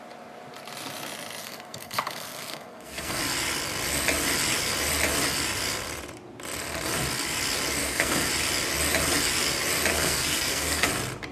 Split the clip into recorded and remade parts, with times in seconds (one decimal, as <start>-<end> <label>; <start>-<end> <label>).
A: 0.0-1.4 recorded; 1.4-3.2 remade; 3.2-7.8 recorded; 7.8-8.3 remade; 8.3-9.9 recorded; 9.9-10.9 remade; 10.9-11.3 recorded